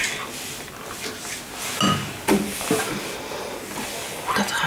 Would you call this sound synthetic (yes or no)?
no